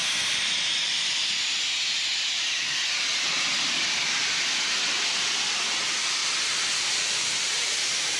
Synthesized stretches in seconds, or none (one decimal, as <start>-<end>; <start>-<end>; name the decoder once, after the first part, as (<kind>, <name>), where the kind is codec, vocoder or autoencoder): 6.2-8.2 (vocoder, BigVGAN v2)